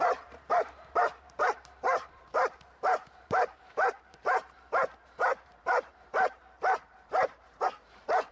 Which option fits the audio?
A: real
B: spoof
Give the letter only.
B